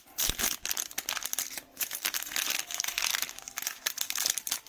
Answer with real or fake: real